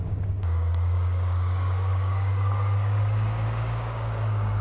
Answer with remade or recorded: remade